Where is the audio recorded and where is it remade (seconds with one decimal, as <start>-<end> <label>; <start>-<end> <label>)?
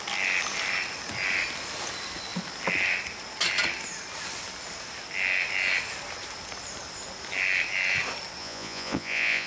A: 0.0-8.4 recorded; 8.4-9.5 remade